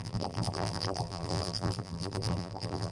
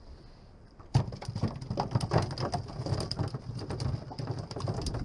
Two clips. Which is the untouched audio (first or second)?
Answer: second